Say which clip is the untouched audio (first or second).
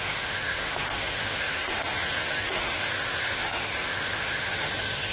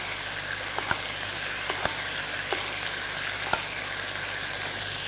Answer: second